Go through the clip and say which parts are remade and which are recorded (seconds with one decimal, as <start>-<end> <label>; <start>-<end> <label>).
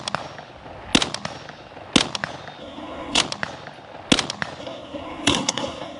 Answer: 0.0-2.6 recorded; 2.6-3.2 remade; 3.2-4.6 recorded; 4.6-6.0 remade